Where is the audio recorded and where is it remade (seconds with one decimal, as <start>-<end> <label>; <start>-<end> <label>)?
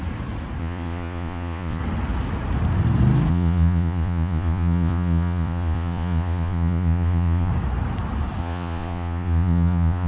0.0-0.6 recorded; 0.6-1.8 remade; 1.8-3.3 recorded; 3.3-7.5 remade; 7.5-8.4 recorded; 8.4-10.1 remade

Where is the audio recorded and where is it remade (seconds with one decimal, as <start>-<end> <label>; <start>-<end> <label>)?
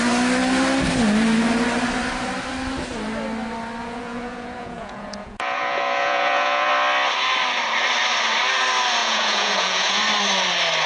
0.0-3.8 recorded; 3.8-6.7 remade; 6.7-9.0 recorded; 9.0-10.0 remade; 10.0-10.9 recorded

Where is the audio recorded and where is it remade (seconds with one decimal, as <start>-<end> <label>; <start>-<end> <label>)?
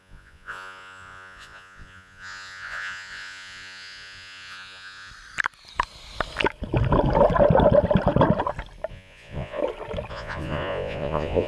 0.0-5.1 remade; 5.1-8.9 recorded; 8.9-9.6 remade; 9.6-10.1 recorded; 10.1-11.5 remade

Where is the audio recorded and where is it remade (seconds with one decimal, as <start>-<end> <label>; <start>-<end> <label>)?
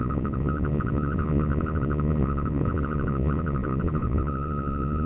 0.0-5.1 remade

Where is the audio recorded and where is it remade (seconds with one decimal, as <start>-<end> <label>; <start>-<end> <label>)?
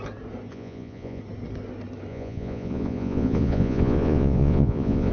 0.0-0.5 recorded; 0.5-1.2 remade; 1.2-2.1 recorded; 2.1-5.1 remade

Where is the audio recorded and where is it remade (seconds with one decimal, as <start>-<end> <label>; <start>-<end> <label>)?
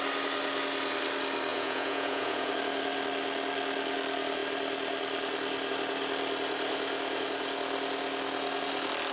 0.0-1.5 recorded; 1.5-2.5 remade; 2.5-9.1 recorded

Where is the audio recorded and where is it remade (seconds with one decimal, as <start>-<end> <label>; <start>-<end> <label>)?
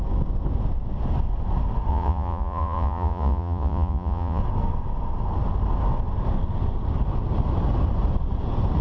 0.0-1.9 recorded; 1.9-4.4 remade; 4.4-8.8 recorded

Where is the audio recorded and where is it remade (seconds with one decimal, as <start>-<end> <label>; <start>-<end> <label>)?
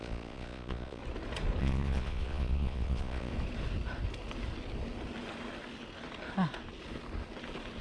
0.0-1.0 remade; 1.0-1.6 recorded; 1.6-3.3 remade; 3.3-7.8 recorded